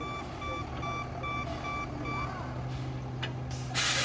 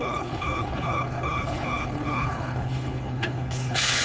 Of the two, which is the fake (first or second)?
second